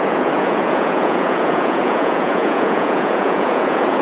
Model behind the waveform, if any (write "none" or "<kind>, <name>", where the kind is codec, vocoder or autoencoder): vocoder, Vocos